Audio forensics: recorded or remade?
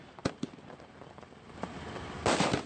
recorded